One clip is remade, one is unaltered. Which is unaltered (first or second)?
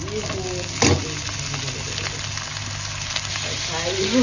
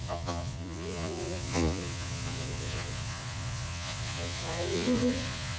first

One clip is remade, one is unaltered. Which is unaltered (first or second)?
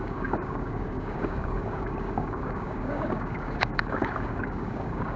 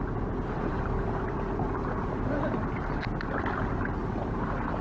second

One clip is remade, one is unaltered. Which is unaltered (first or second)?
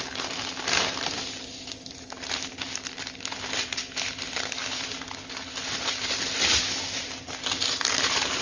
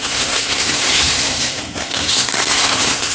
first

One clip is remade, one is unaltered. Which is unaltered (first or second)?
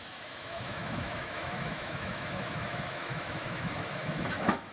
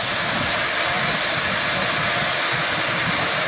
second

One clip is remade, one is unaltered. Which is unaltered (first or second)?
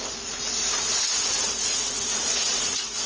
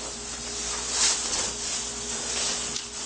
second